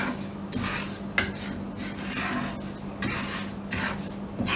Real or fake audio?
real